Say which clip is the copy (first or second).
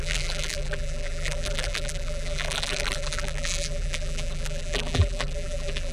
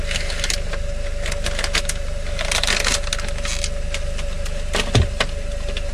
first